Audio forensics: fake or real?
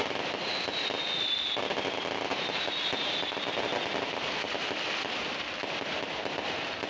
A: real